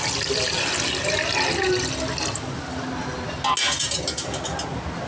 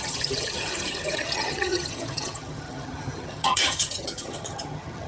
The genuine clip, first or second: first